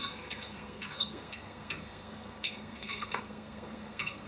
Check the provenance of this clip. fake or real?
fake